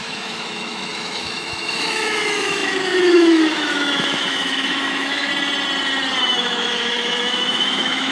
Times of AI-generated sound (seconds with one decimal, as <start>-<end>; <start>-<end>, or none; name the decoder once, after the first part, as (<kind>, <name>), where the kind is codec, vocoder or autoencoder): 0.0-5.3 (autoencoder, DAC-VAE); 6.2-8.1